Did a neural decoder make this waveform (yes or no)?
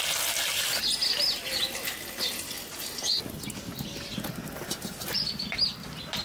no